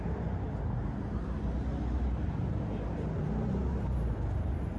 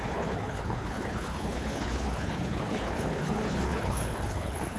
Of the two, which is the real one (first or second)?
first